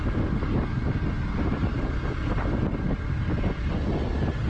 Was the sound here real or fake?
real